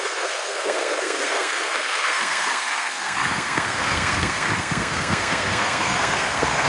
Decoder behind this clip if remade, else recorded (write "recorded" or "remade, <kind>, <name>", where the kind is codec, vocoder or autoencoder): remade, codec, SNAC